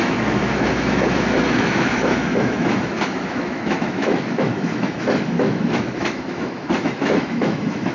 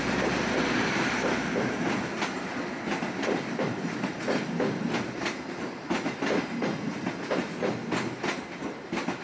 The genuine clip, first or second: second